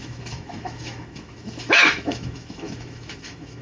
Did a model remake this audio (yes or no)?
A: yes